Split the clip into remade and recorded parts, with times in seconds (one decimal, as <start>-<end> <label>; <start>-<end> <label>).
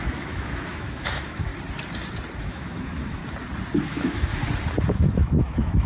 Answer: 0.0-1.5 remade; 1.5-2.4 recorded; 2.4-3.2 remade; 3.2-3.9 recorded; 3.9-4.3 remade; 4.3-4.9 recorded; 4.9-5.9 remade